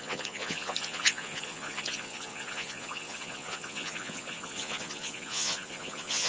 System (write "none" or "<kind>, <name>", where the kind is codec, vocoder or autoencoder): vocoder, Vocos